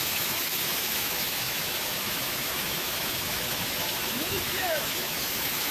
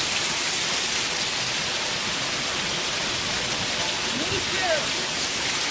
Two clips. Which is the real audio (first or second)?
second